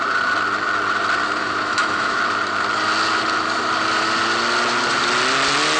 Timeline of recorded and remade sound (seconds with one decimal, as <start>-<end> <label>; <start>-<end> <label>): 0.0-1.4 recorded; 1.4-2.2 remade; 2.2-5.8 recorded